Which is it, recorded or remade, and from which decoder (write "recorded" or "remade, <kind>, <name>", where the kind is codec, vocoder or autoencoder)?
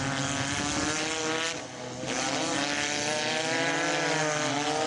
recorded